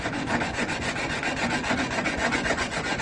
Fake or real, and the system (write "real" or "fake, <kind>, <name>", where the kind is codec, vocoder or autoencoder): fake, vocoder, Vocos